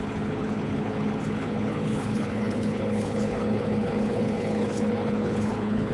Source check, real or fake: fake